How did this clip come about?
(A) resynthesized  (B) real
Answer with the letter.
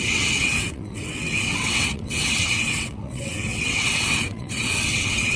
A